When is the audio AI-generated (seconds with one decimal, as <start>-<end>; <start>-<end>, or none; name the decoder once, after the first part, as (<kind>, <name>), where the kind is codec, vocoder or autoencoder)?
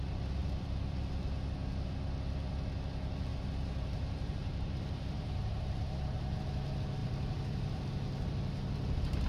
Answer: 0.4-1.0 (vocoder, BigVGAN v2); 3.3-6.4; 7.0-7.8